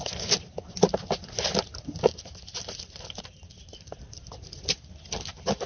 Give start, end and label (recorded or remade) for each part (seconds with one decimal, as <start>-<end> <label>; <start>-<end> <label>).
0.0-5.7 recorded